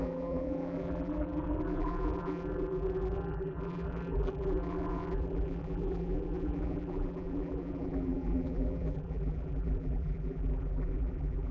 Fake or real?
fake